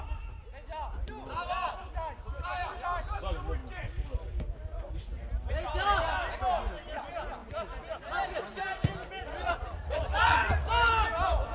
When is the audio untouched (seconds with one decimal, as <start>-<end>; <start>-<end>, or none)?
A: 0.0-9.2; 10.7-11.5